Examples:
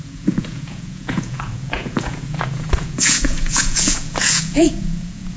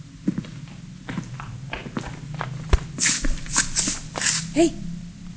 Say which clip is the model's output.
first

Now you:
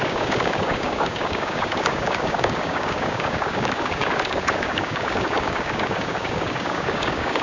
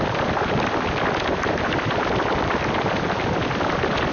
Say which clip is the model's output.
first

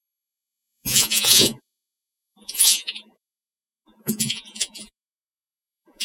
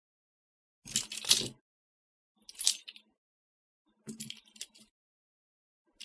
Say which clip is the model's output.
first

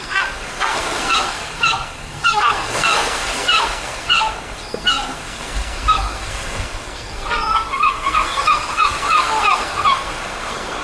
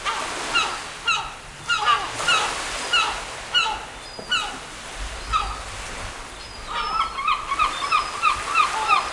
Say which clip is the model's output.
first